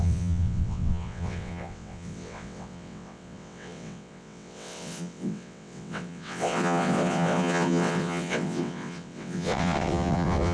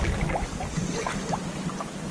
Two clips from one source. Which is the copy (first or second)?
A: first